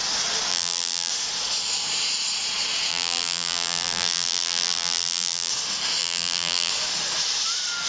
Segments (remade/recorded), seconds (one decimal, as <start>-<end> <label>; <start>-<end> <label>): 0.0-0.5 recorded; 0.5-1.1 remade; 1.1-2.9 recorded; 2.9-5.5 remade; 5.5-6.0 recorded; 6.0-6.7 remade; 6.7-7.9 recorded